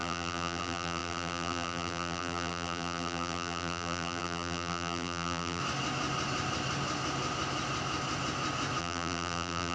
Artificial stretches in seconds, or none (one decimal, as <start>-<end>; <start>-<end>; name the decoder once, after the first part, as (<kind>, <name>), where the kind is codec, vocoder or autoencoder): 0.0-5.6 (vocoder, BigVGAN v2); 8.8-9.7